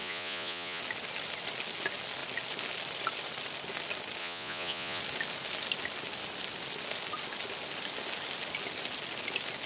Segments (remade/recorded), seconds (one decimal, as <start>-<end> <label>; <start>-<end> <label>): 0.0-0.8 remade; 0.8-4.2 recorded; 4.2-5.0 remade; 5.0-9.7 recorded